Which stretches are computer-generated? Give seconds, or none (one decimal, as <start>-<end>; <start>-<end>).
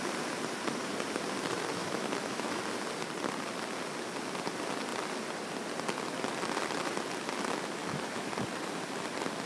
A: 1.8-2.6; 7.8-8.3